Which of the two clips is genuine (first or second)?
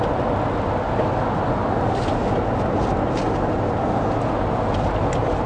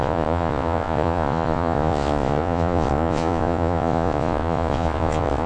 first